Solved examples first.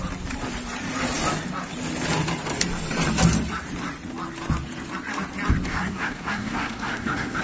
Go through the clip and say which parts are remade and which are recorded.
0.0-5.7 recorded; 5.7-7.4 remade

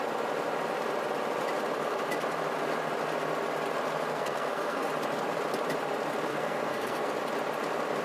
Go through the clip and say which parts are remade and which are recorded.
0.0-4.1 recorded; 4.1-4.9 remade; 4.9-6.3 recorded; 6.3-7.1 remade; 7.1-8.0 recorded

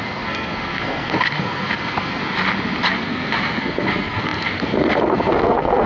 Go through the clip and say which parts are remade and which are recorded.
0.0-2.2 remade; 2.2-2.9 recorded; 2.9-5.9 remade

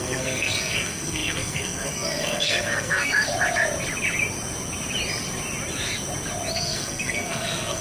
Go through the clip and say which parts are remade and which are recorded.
0.0-3.3 remade; 3.3-6.5 recorded; 6.5-7.8 remade

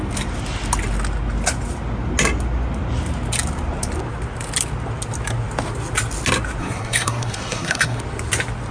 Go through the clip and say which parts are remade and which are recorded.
0.0-6.6 recorded; 6.6-8.0 remade; 8.0-8.7 recorded

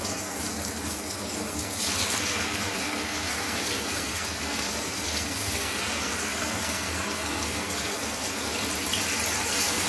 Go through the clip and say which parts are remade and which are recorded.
0.0-8.5 remade; 8.5-9.4 recorded; 9.4-9.9 remade